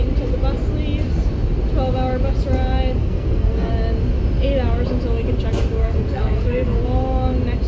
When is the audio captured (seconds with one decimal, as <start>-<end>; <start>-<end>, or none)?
0.0-3.0; 3.7-5.8; 6.8-7.7